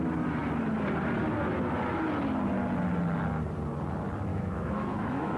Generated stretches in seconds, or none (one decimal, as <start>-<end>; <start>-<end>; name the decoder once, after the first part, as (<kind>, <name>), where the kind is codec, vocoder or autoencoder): 4.3-5.4 (autoencoder, DAC-VAE)